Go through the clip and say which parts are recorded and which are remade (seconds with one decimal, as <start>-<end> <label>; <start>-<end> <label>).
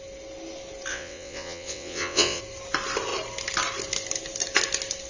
0.0-0.9 recorded; 0.9-2.4 remade; 2.4-5.1 recorded